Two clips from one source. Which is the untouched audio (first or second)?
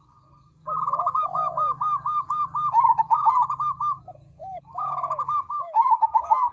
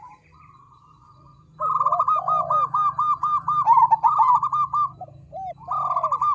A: second